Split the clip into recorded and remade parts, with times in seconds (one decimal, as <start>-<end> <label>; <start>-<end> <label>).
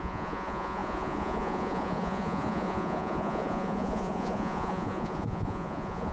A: 0.0-6.1 remade